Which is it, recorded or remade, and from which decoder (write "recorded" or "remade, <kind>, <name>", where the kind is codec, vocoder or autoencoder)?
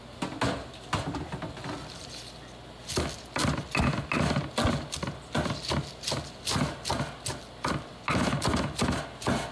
recorded